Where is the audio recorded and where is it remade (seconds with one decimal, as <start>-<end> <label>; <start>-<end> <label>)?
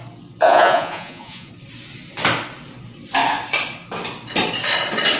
0.0-0.4 recorded; 0.4-1.5 remade; 1.5-5.2 recorded